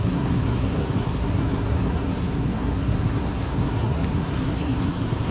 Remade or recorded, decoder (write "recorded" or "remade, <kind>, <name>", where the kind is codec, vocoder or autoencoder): remade, codec, SNAC